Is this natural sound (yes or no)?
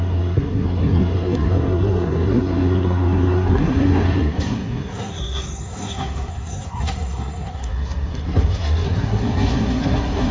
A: no